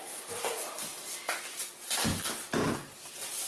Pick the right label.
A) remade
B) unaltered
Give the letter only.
B